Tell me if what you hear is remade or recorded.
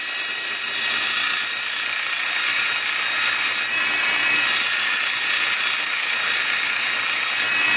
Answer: recorded